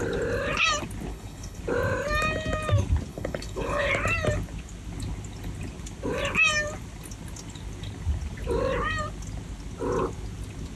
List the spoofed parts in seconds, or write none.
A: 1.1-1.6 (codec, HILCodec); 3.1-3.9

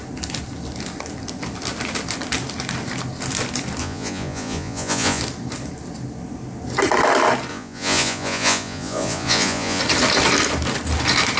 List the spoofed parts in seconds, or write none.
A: 3.8-5.2 (vocoder, Vocos); 7.5-9.8

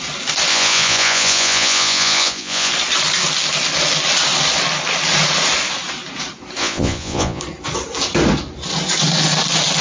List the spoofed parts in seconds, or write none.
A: 0.5-2.7 (vocoder, Vocos); 6.6-7.4

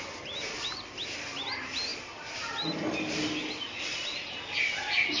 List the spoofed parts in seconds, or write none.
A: none

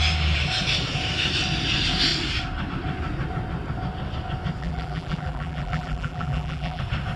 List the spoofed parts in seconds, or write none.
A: 4.6-6.8 (vocoder, BigVGAN v2)

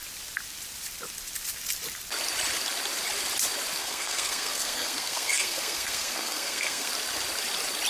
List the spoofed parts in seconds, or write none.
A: 3.8-6.9 (codec, SNAC)

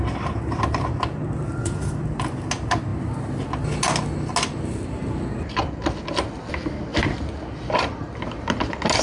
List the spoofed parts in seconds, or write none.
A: none